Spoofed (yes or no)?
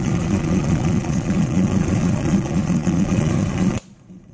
yes